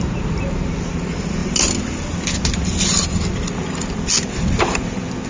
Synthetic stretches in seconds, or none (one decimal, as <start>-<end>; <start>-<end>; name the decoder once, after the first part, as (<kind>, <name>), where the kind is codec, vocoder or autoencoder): none